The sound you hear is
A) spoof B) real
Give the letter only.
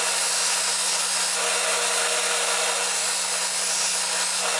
B